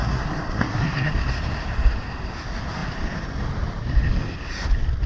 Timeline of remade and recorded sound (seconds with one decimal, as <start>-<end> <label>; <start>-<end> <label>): 0.0-1.1 remade; 1.1-5.1 recorded